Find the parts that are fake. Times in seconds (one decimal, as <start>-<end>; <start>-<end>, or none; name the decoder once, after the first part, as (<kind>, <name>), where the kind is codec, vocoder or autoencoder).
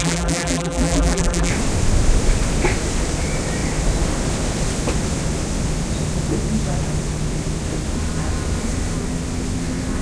0.0-1.5 (vocoder, BigVGAN v2)